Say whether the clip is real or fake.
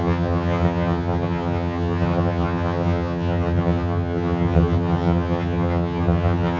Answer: fake